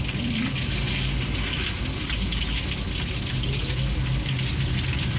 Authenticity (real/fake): real